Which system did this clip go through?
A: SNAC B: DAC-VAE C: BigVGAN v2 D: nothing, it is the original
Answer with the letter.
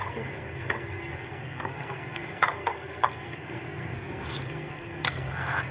A